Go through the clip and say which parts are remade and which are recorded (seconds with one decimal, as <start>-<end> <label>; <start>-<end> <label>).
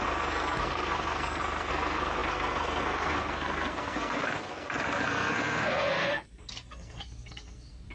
0.0-7.9 remade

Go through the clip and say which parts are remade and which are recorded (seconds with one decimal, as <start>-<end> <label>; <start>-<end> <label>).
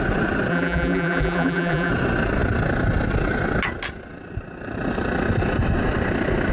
0.0-0.5 recorded; 0.5-1.9 remade; 1.9-6.5 recorded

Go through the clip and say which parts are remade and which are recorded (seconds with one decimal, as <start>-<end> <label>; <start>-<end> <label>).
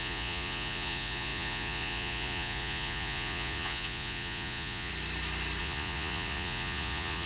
0.0-4.9 remade; 4.9-5.6 recorded; 5.6-7.3 remade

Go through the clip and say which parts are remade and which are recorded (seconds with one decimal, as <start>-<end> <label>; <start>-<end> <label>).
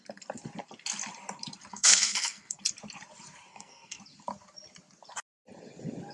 0.0-1.7 recorded; 1.7-2.6 remade; 2.6-3.5 recorded; 3.5-4.0 remade; 4.0-6.1 recorded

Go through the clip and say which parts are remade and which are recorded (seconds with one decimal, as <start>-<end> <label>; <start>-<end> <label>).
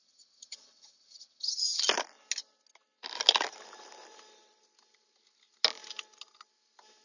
0.0-1.8 remade; 1.8-7.0 recorded